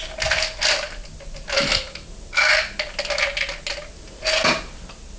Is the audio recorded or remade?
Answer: recorded